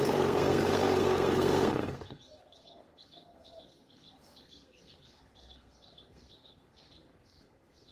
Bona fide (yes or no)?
no